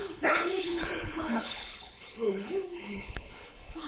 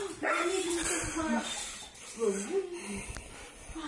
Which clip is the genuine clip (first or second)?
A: second